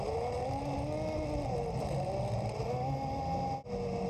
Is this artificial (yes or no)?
no